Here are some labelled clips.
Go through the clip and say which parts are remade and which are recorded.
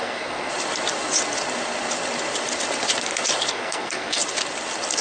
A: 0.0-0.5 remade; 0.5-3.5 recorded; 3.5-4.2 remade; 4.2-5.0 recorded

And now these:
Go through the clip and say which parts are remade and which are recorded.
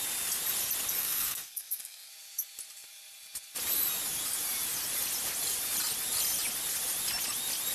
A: 0.0-1.0 recorded; 1.0-2.1 remade; 2.1-7.7 recorded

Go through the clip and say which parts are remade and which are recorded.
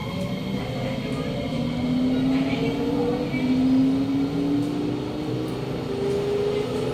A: 0.0-6.9 recorded